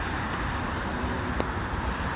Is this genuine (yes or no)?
yes